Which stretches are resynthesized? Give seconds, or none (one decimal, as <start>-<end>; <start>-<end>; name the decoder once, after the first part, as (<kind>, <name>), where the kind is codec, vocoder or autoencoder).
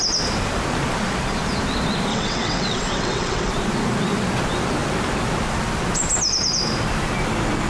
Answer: 2.1-3.5 (vocoder, WaveNeXt)